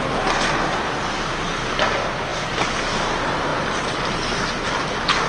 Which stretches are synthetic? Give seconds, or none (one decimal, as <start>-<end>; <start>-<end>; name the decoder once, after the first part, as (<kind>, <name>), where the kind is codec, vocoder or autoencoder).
none